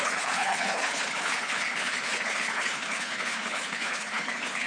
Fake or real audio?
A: fake